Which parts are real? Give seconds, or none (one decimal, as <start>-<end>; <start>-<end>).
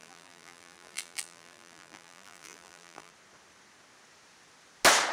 3.1-5.1